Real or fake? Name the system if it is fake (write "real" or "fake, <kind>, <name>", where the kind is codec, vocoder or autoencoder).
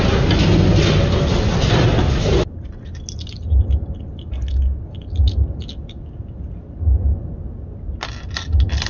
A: real